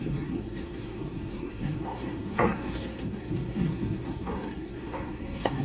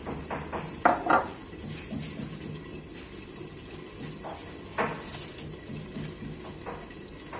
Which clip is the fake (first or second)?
first